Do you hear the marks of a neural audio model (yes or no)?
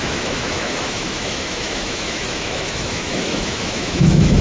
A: yes